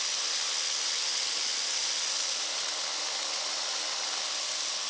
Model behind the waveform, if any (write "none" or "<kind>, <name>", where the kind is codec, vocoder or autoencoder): none